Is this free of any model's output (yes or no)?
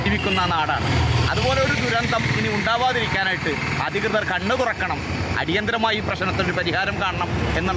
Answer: yes